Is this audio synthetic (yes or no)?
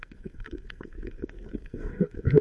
yes